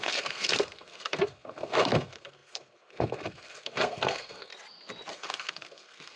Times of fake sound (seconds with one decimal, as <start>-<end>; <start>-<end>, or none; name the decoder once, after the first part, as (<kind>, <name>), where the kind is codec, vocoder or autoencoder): 0.0-4.5 (codec, SNAC); 5.1-6.2